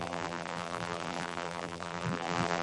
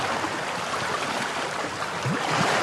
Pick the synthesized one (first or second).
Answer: first